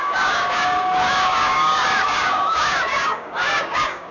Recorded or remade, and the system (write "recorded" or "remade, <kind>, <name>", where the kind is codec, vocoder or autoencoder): remade, codec, DAC